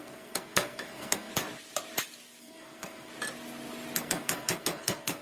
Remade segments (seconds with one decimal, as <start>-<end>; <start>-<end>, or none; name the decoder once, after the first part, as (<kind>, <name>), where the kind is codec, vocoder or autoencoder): 0.0-1.3 (codec, SNAC); 2.4-3.1; 4.0-5.2